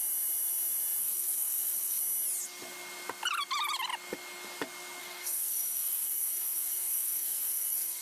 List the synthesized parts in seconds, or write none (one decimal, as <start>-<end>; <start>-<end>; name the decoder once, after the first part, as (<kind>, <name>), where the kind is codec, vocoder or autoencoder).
1.0-2.0 (codec, SNAC); 5.0-8.0